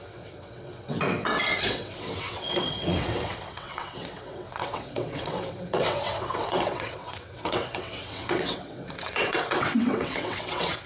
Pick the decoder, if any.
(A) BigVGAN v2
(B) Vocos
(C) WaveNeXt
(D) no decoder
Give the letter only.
C